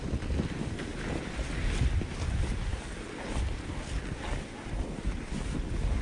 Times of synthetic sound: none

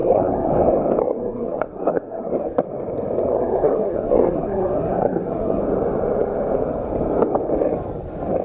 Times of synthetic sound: 0.0-0.5 (codec, SNAC); 1.0-2.3; 3.3-5.6